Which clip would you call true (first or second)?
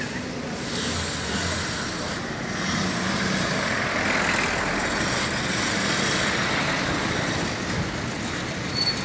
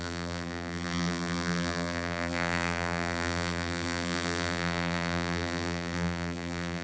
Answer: first